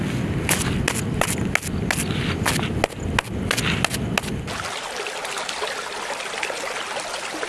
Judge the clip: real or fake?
real